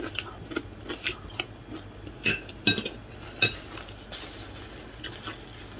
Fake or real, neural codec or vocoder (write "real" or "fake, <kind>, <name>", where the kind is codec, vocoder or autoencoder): real